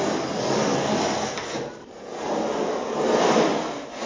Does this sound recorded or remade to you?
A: recorded